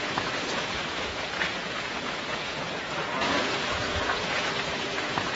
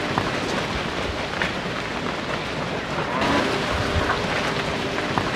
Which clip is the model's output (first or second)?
first